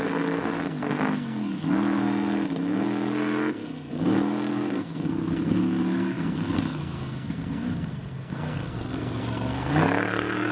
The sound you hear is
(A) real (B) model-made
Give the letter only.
B